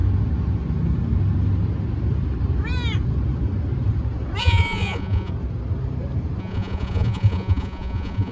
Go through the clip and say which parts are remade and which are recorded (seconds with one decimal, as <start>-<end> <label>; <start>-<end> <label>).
0.0-4.4 recorded; 4.4-5.3 remade; 5.3-6.4 recorded; 6.4-8.3 remade